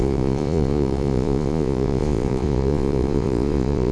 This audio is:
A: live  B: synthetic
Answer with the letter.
B